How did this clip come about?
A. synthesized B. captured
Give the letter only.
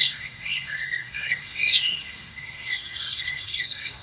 A